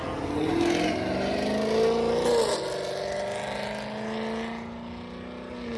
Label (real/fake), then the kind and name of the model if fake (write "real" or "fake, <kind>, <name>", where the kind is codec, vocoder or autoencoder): real